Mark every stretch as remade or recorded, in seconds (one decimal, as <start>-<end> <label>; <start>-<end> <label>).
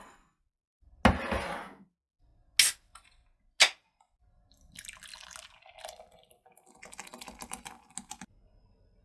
0.0-9.0 recorded